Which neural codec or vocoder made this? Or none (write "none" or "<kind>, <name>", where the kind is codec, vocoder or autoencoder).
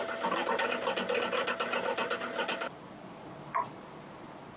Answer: none